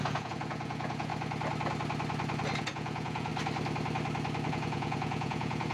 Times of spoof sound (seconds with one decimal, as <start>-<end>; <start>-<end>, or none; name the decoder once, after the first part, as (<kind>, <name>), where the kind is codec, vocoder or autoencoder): 0.0-1.1 (vocoder, Vocos); 2.6-3.3; 4.5-5.7